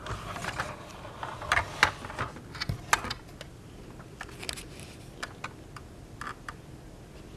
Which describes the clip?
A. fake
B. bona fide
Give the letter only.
B